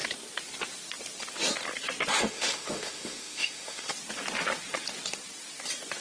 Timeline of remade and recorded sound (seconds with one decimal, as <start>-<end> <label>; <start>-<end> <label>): 0.0-2.2 recorded; 2.2-3.9 remade; 3.9-6.0 recorded